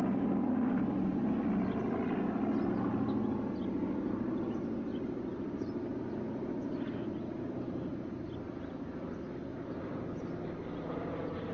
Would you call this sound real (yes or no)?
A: yes